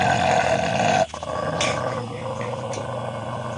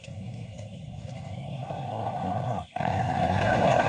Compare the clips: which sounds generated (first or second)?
second